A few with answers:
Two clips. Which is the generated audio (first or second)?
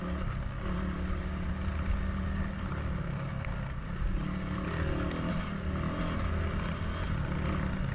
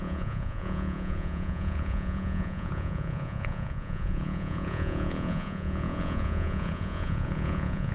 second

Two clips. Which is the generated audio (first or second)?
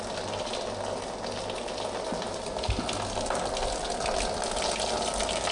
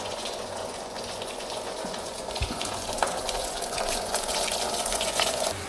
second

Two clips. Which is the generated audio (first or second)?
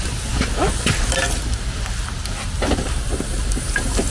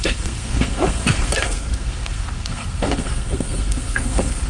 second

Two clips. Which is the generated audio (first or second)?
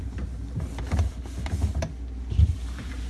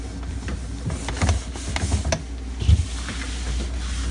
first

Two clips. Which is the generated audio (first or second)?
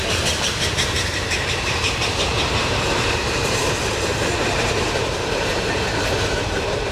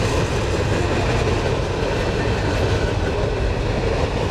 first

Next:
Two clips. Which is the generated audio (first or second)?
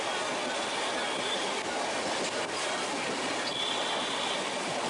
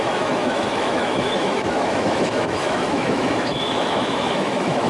second